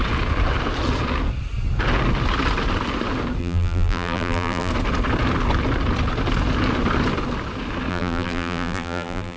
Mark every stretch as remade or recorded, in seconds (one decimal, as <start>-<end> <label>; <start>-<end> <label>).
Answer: 0.0-3.4 recorded; 3.4-4.7 remade; 4.7-7.9 recorded; 7.9-9.4 remade